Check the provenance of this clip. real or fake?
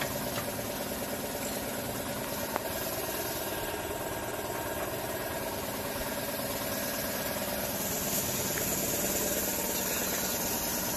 real